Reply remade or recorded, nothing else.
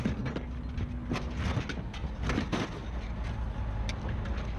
recorded